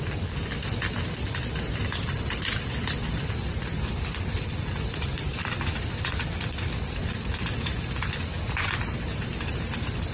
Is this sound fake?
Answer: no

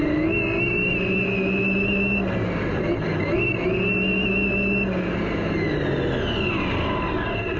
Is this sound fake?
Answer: no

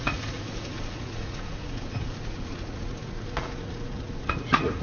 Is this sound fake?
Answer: yes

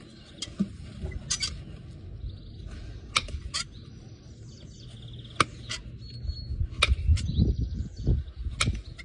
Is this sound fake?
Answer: no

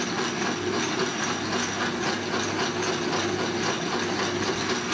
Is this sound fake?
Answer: no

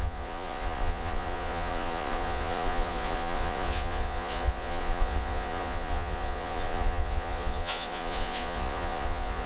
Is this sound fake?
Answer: yes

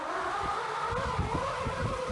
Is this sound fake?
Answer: no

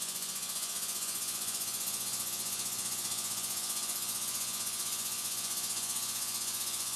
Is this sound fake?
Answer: yes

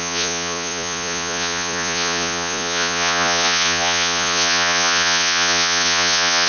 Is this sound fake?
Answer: yes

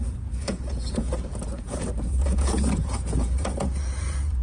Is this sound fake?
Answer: yes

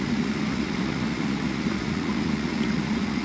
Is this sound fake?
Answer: yes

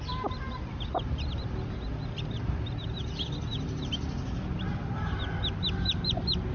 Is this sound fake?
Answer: no